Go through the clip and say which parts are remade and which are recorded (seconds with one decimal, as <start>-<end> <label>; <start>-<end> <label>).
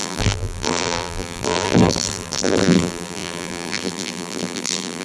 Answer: 0.0-5.0 remade